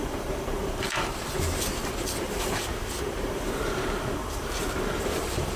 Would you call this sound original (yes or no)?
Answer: no